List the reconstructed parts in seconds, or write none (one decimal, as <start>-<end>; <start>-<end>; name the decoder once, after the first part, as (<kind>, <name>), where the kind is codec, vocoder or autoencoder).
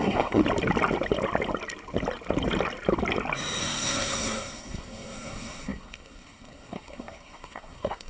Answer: 0.0-0.4 (codec, SNAC); 3.6-8.1